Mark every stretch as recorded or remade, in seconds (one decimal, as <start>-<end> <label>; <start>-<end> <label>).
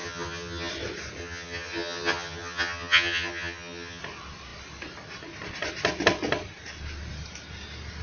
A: 0.0-0.7 remade; 0.7-1.2 recorded; 1.2-4.0 remade; 4.0-8.0 recorded